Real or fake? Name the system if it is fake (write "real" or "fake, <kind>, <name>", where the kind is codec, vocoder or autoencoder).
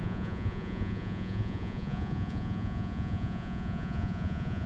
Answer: fake, vocoder, Vocos